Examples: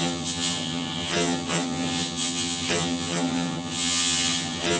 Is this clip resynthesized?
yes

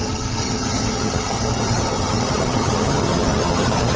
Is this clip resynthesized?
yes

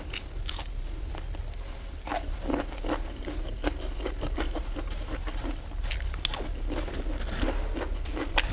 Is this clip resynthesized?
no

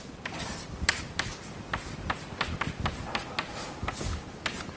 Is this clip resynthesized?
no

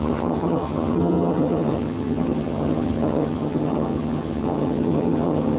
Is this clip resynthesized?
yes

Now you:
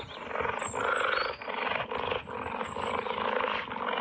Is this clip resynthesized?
no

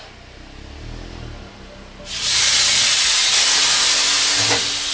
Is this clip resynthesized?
no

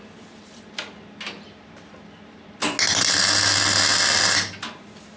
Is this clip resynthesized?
no